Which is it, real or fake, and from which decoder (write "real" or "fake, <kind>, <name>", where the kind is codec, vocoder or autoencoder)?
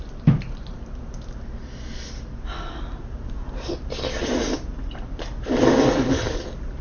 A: real